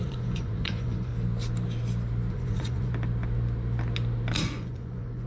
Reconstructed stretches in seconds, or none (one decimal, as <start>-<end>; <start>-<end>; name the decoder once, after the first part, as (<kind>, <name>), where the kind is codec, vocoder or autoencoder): 0.0-1.1 (vocoder, Vocos); 2.3-2.9; 4.4-5.3